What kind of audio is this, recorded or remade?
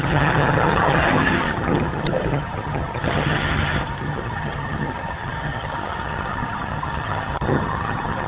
remade